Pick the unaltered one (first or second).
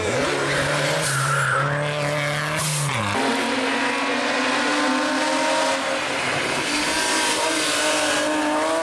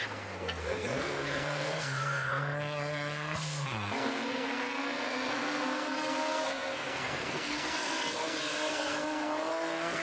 first